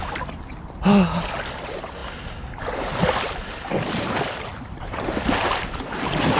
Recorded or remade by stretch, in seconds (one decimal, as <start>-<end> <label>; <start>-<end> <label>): 0.0-6.4 recorded